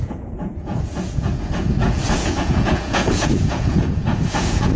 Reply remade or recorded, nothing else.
remade